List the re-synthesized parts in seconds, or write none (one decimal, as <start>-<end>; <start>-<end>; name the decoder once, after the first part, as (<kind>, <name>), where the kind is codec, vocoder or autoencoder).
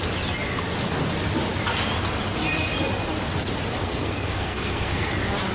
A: 3.8-5.1 (codec, SNAC)